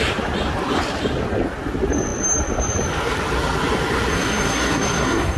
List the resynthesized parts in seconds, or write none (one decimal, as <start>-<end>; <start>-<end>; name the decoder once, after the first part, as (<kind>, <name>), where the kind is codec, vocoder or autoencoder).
4.1-5.4 (codec, SNAC)